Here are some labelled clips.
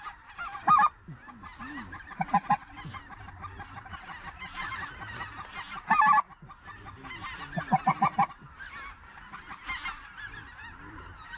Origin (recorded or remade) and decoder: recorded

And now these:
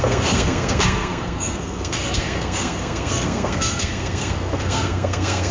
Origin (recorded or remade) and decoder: remade, codec, SNAC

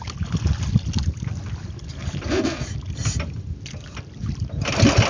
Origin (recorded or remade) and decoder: recorded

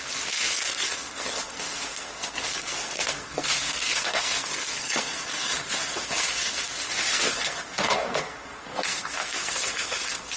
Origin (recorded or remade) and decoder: remade, codec, SNAC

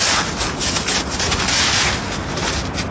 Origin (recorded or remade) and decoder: recorded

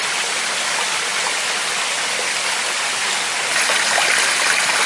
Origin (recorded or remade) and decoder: recorded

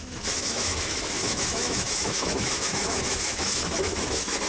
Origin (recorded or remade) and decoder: remade, autoencoder, DAC-VAE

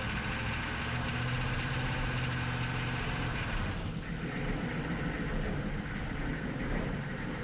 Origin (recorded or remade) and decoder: recorded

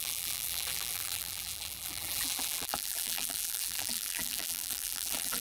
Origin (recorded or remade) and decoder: remade, vocoder, BigVGAN v2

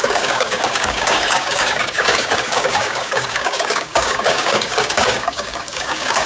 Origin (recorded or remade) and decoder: remade, codec, DAC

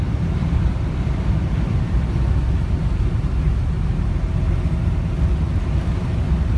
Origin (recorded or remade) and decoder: recorded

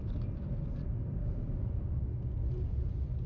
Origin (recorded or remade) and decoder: recorded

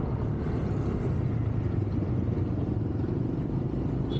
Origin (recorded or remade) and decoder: recorded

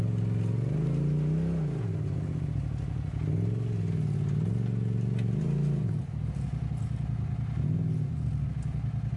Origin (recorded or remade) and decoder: recorded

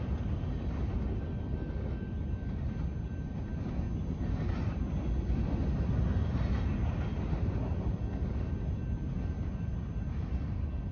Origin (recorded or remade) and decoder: recorded